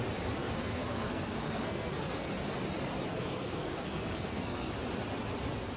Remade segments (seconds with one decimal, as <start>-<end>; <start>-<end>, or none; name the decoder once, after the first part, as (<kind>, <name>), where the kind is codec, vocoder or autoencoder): 0.4-2.3 (codec, SNAC); 3.1-4.7